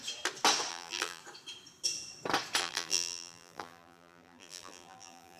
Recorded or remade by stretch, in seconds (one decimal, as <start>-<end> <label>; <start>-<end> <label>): 0.0-0.7 recorded; 0.7-1.2 remade; 1.2-2.6 recorded; 2.6-5.4 remade